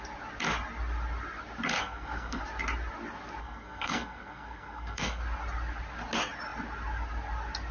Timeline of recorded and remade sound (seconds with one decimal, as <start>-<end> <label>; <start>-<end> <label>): 0.0-1.8 recorded; 1.8-2.4 remade; 2.4-3.4 recorded; 3.4-5.2 remade; 5.2-7.7 recorded

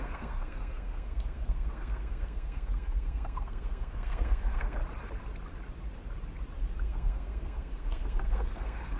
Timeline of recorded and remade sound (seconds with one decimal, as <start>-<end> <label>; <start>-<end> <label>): 0.0-4.8 remade; 4.8-6.8 recorded; 6.8-9.0 remade

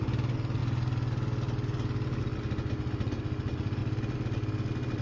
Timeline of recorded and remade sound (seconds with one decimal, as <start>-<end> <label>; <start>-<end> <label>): 0.0-5.0 recorded

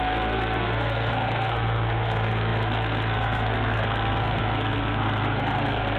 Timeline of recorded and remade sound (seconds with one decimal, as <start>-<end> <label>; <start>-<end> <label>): 0.0-6.0 remade

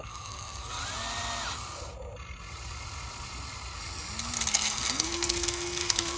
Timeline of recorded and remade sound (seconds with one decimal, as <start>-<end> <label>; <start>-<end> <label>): 0.0-0.8 remade; 0.8-4.5 recorded; 4.5-6.2 remade

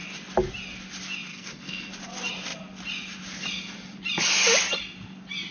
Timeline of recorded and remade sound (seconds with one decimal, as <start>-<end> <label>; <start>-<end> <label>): 0.0-1.3 recorded; 1.3-1.9 remade; 1.9-5.5 recorded